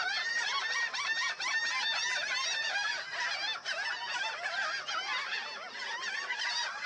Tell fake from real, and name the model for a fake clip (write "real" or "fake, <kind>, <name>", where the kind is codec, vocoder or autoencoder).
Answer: real